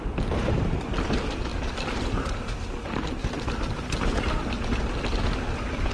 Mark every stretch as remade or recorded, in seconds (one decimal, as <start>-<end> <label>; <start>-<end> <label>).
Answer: 0.0-1.5 recorded; 1.5-2.3 remade; 2.3-3.2 recorded; 3.2-4.8 remade; 4.8-5.9 recorded